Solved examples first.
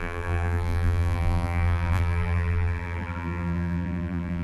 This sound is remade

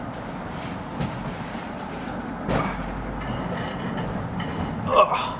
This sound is recorded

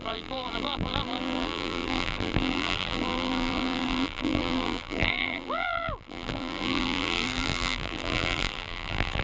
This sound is remade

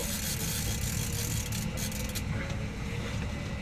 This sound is recorded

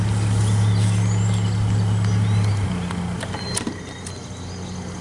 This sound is recorded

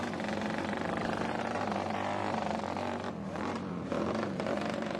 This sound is remade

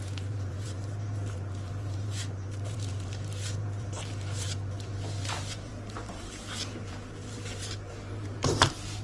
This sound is remade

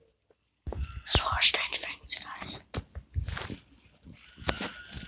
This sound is recorded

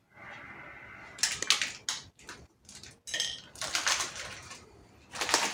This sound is recorded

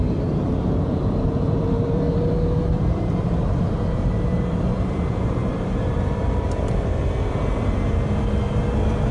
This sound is remade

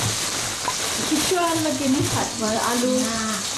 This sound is remade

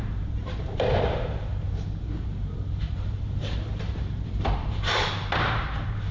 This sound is remade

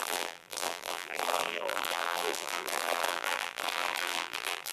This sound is remade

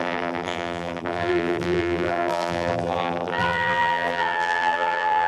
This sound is remade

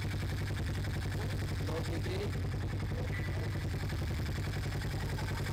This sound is recorded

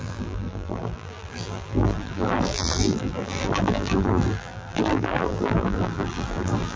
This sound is remade